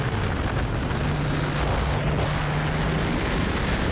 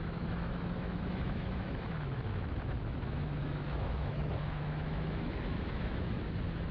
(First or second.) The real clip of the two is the first